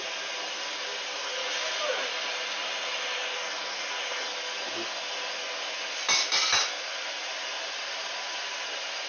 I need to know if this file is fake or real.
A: real